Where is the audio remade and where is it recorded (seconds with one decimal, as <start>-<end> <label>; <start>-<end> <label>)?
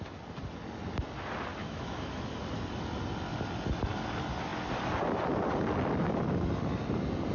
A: 0.0-1.6 recorded; 1.6-2.2 remade; 2.2-7.3 recorded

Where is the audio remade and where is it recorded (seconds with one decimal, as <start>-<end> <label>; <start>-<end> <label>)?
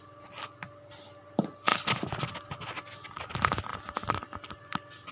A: 0.0-5.1 recorded